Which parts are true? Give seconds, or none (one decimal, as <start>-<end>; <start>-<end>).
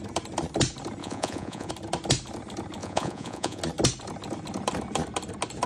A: 0.0-1.0; 1.7-2.8; 3.6-5.7